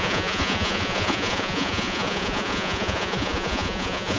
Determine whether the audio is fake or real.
fake